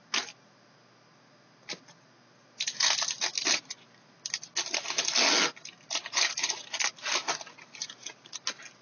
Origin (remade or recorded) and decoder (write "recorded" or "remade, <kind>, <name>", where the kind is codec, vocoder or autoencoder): recorded